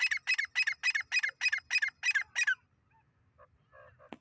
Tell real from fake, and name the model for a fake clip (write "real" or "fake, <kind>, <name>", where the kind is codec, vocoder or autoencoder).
real